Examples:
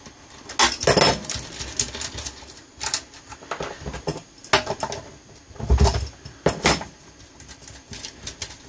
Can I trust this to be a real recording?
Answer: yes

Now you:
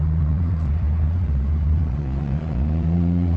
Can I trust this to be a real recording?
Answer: no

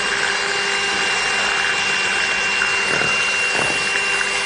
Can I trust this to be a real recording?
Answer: yes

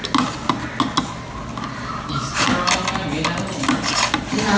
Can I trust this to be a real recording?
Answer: yes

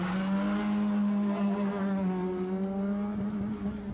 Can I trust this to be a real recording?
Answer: yes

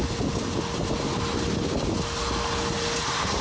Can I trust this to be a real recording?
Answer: yes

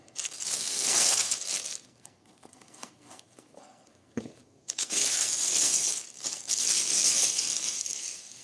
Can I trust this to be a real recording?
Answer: no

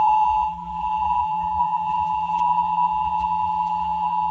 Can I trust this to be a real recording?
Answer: no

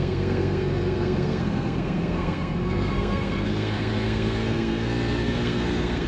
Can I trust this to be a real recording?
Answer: no